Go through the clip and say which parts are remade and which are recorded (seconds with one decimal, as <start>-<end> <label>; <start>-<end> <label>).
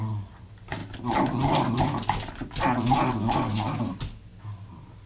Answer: 0.0-5.1 recorded